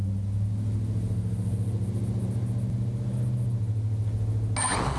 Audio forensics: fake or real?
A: real